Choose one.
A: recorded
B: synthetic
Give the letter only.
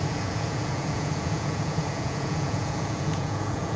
B